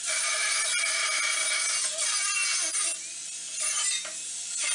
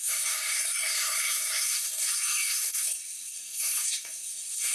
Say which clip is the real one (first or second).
first